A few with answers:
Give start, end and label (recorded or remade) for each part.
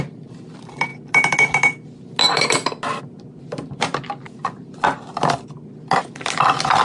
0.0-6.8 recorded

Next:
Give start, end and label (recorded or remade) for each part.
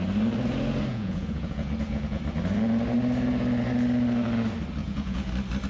0.0-0.9 recorded; 0.9-2.2 remade; 2.2-4.8 recorded; 4.8-5.3 remade; 5.3-5.7 recorded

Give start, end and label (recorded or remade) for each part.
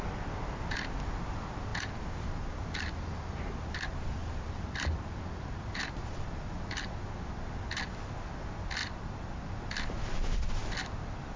0.0-11.4 recorded